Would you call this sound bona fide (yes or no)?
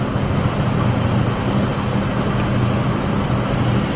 yes